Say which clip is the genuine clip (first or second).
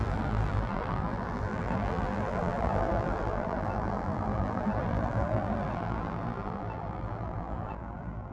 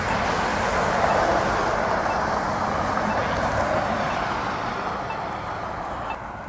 second